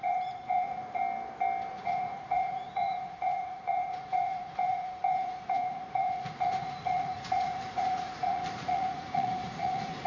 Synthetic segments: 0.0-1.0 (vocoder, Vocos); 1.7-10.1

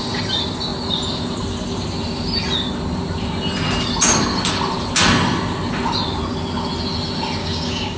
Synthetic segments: 7.4-8.0 (codec, DAC)

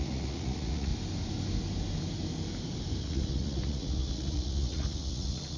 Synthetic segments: 0.0-0.9 (vocoder, Vocos); 3.0-5.6